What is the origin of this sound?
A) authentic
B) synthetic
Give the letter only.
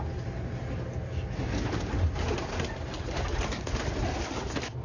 A